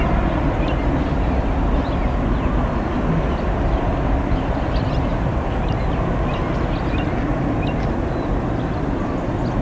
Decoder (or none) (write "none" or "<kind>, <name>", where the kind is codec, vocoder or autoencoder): none